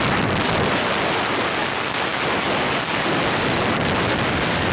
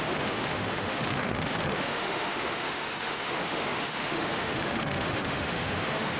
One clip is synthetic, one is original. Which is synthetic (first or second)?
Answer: second